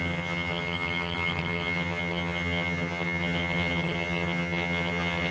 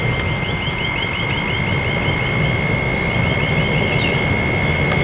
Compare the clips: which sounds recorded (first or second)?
second